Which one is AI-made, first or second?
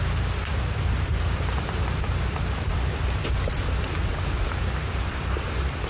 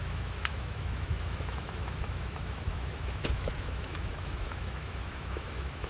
second